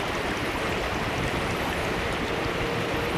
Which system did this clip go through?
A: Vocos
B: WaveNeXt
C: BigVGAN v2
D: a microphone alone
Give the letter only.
D